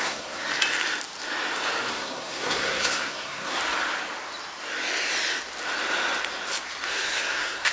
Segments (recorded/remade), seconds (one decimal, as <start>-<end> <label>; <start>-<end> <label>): 0.0-0.5 remade; 0.5-1.9 recorded; 1.9-3.6 remade; 3.6-6.9 recorded; 6.9-7.7 remade